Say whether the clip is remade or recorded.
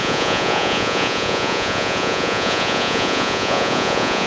remade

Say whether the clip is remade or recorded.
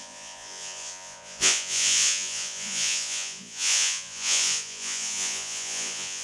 remade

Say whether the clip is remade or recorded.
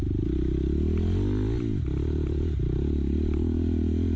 recorded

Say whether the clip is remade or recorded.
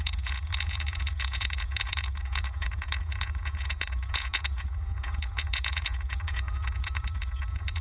remade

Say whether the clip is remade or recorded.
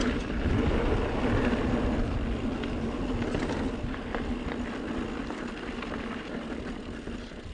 recorded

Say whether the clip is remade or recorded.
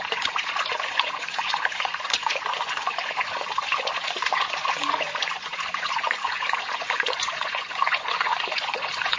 remade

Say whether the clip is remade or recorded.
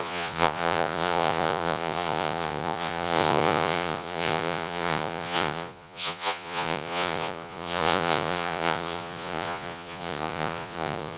remade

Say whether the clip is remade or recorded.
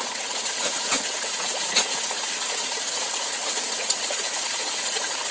remade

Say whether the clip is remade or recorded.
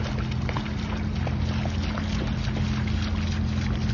recorded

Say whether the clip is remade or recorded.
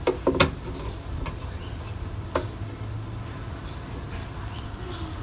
recorded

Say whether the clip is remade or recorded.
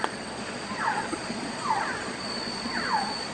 remade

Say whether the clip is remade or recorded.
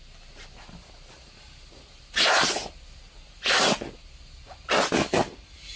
recorded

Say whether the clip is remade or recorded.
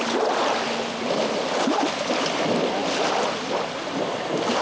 recorded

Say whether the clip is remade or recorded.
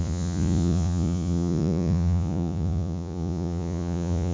remade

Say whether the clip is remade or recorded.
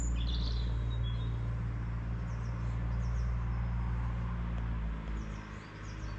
recorded